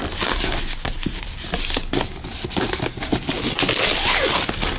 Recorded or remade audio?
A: recorded